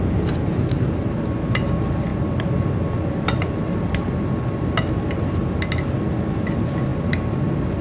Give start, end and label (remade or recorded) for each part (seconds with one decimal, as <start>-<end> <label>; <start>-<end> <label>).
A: 0.0-6.9 recorded; 6.9-7.8 remade